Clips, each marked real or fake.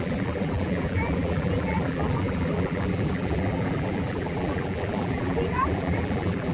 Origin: fake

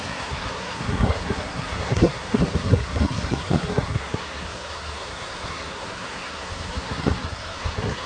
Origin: fake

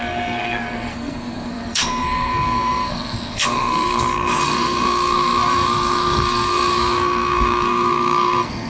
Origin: fake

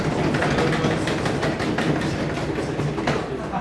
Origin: real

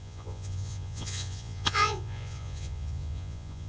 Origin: fake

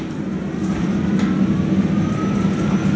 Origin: real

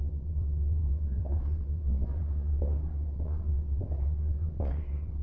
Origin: fake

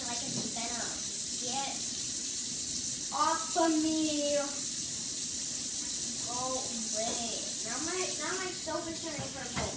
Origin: real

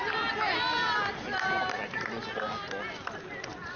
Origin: real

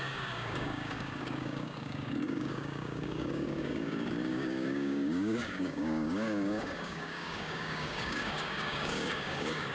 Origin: fake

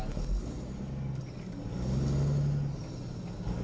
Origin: real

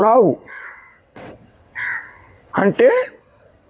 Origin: fake